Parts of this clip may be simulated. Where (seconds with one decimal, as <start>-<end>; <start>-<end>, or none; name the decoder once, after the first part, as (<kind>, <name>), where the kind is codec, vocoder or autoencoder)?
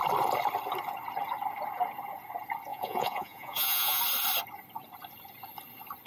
2.7-4.0 (vocoder, Vocos)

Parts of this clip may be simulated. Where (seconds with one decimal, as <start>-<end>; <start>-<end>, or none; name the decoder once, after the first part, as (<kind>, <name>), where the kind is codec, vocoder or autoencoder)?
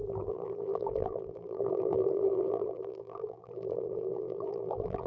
0.0-5.1 (vocoder, BigVGAN v2)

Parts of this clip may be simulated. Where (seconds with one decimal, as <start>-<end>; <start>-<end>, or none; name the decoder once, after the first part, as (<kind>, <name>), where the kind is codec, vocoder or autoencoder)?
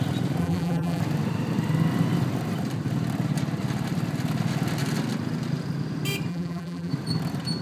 0.4-1.0 (vocoder, BigVGAN v2); 6.3-6.9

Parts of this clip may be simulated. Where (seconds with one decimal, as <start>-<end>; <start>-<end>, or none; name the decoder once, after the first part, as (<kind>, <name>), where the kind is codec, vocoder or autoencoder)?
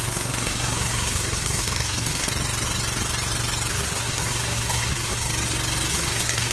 0.0-2.3 (codec, SNAC); 3.7-5.3; 5.9-6.5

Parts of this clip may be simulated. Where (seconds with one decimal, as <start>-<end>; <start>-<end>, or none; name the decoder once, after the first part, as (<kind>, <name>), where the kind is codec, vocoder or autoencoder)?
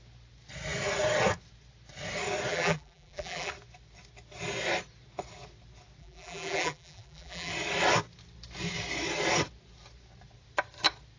2.5-3.5 (vocoder, BigVGAN v2); 6.0-7.5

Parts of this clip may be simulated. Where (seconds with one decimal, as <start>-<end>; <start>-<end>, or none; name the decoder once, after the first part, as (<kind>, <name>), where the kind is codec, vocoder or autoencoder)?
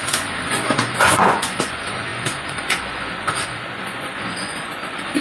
0.0-5.2 (vocoder, Vocos)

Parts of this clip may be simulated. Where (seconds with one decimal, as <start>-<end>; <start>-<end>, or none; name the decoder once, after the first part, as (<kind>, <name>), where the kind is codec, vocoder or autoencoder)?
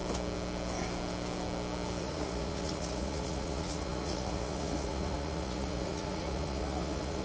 2.0-7.2 (vocoder, Vocos)